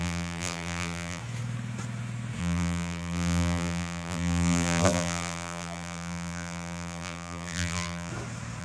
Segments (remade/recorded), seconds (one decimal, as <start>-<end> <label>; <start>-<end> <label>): 0.0-1.2 remade; 1.2-2.4 recorded; 2.4-8.1 remade; 8.1-8.6 recorded